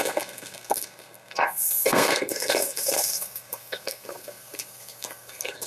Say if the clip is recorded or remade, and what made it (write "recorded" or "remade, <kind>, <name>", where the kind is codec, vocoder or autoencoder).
remade, codec, SNAC